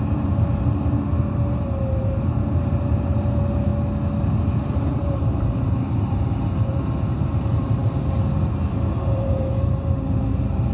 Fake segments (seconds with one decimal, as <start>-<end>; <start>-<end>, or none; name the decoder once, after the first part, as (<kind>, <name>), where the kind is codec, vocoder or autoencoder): 0.0-3.7 (vocoder, BigVGAN v2); 4.2-10.7